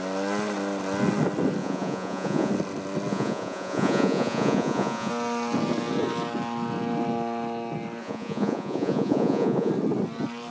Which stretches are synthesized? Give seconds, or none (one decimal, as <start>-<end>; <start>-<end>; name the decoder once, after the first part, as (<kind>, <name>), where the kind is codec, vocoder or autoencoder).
1.6-2.5 (vocoder, Vocos); 3.1-5.1; 8.0-9.7